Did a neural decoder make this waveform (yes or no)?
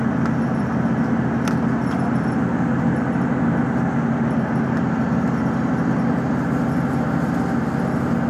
no